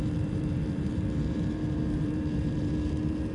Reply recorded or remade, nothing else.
remade